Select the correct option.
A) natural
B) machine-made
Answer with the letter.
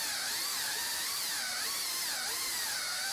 B